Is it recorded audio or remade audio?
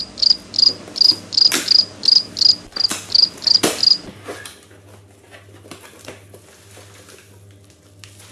recorded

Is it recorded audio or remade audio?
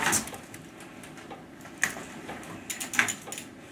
recorded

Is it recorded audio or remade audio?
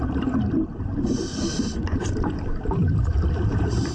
remade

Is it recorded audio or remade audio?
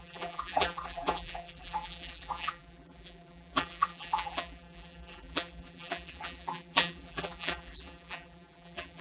remade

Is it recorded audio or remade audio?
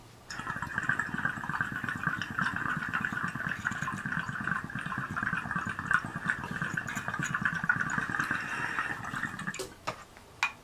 recorded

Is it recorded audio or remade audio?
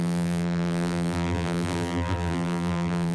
remade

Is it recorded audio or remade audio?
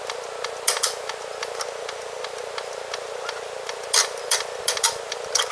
recorded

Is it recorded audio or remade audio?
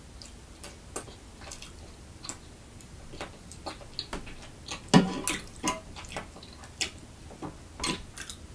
recorded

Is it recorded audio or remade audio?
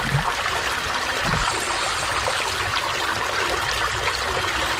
recorded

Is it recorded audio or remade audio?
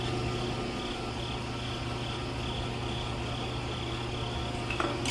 recorded